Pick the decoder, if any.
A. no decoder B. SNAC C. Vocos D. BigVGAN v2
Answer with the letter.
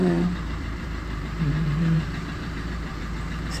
D